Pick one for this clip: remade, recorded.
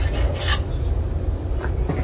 recorded